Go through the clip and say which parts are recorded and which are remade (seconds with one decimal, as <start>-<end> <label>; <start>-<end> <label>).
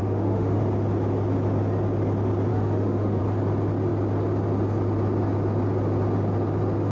0.0-0.6 remade; 0.6-2.5 recorded; 2.5-3.2 remade; 3.2-6.9 recorded